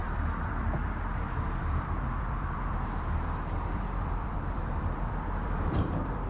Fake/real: fake